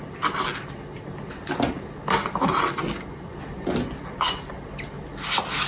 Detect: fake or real real